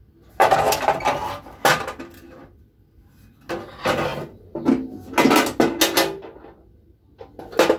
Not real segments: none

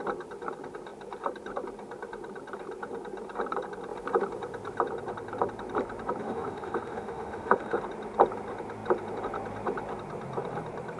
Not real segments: 6.2-7.8 (autoencoder, DAC-VAE)

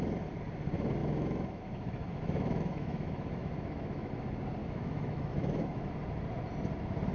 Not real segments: 1.0-4.1 (autoencoder, DAC-VAE); 4.6-5.9

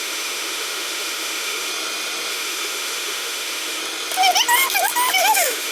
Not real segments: 0.0-1.7 (autoencoder, DAC-VAE); 2.3-3.8; 5.2-5.7

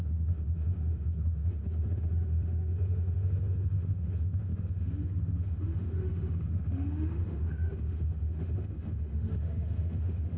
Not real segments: 0.0-10.4 (autoencoder, DAC-VAE)